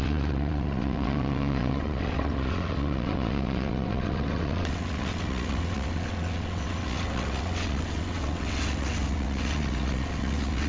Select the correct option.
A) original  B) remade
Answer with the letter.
B